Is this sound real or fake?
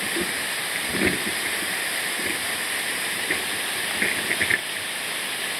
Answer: real